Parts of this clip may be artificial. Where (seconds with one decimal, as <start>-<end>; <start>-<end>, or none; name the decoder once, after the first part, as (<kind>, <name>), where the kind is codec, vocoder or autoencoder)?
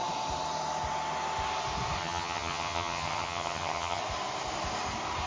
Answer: 2.0-4.0 (vocoder, HiFi-GAN)